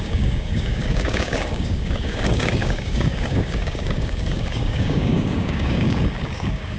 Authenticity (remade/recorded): remade